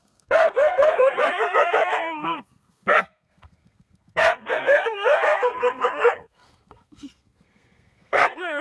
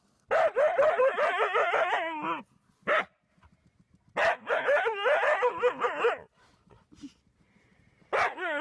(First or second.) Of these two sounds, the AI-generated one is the first